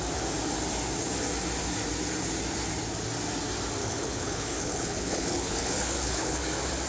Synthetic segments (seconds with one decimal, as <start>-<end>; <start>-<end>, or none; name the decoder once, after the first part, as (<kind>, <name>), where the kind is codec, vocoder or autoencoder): 3.8-6.4 (codec, HILCodec)